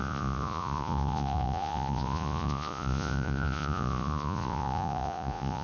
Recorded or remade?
remade